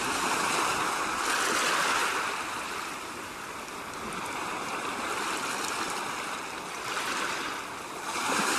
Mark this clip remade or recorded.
recorded